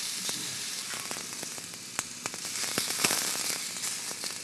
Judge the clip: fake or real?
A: real